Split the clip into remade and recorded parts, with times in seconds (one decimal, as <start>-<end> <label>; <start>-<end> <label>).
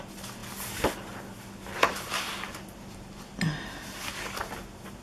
0.0-5.0 recorded